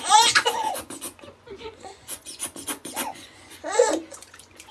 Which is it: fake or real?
fake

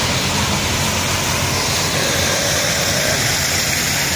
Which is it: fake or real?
real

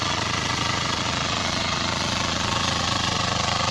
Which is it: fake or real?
fake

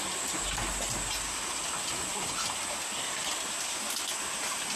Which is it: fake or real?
real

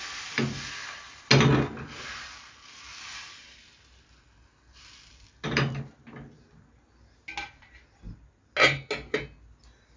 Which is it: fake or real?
real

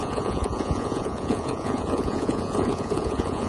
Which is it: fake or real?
fake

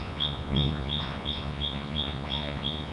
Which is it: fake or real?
fake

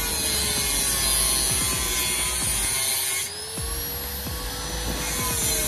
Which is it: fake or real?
real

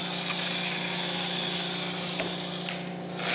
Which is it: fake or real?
real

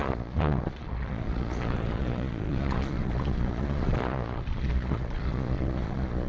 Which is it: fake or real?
fake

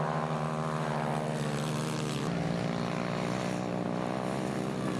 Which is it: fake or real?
real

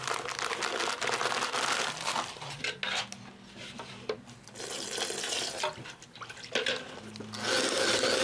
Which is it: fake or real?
real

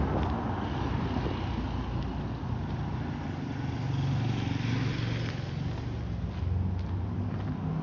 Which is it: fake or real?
real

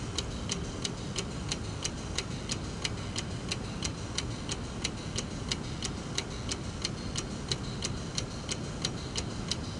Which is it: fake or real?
real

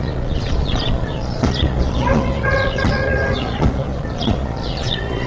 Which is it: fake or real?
fake